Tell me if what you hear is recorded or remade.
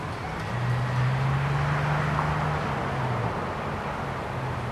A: recorded